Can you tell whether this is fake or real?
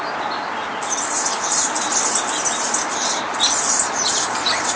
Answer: real